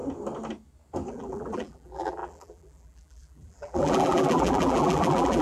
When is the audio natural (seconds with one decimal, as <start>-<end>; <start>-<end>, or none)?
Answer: 0.0-1.1